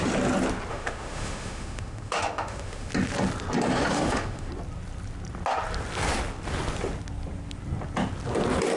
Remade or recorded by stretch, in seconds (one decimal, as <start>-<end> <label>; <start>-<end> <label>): 0.0-0.7 recorded; 0.7-2.9 remade; 2.9-3.9 recorded; 3.9-4.5 remade; 4.5-8.8 recorded